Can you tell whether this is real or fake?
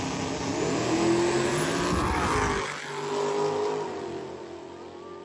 real